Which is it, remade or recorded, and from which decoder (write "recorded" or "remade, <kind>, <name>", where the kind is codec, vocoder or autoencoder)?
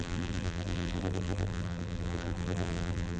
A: remade, vocoder, BigVGAN v2